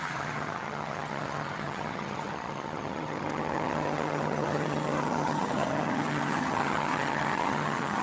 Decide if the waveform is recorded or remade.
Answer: remade